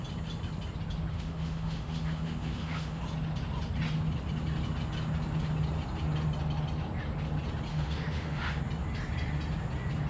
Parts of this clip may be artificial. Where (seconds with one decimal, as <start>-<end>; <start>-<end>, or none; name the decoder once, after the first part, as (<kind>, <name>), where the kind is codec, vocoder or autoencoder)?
1.1-3.0 (autoencoder, DAC-VAE); 7.7-8.6